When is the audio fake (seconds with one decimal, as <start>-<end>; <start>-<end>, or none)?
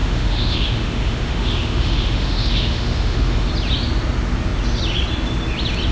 0.0-3.5